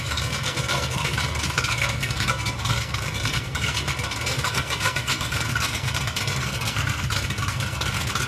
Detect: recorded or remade remade